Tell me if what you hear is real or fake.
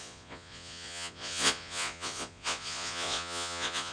fake